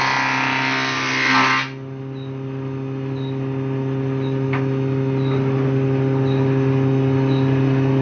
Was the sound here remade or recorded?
recorded